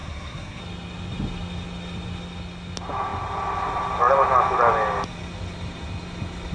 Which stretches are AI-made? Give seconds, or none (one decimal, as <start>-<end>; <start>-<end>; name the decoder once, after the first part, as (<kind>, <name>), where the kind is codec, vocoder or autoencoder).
0.0-0.6 (codec, SNAC)